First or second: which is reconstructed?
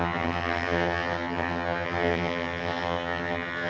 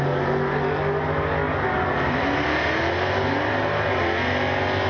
first